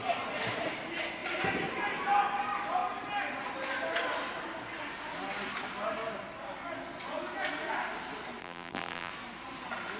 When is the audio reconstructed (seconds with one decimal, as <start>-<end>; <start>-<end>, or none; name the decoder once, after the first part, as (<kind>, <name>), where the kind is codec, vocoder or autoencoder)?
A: 8.4-9.1 (vocoder, BigVGAN v2)